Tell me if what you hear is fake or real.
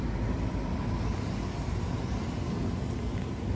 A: real